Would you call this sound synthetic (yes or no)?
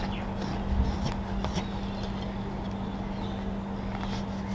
no